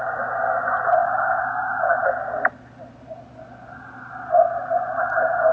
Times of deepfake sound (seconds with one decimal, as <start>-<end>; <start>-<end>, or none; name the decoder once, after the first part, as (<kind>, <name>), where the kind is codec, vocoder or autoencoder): none